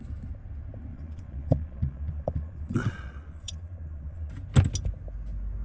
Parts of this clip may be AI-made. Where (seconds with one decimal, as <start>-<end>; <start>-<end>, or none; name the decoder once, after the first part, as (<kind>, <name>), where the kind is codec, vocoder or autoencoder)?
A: 0.9-4.3 (vocoder, Vocos)